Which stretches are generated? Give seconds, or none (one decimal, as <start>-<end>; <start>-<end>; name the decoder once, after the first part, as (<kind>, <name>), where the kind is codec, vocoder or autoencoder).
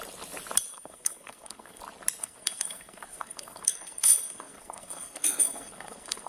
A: 0.7-1.8 (codec, SNAC); 2.2-6.3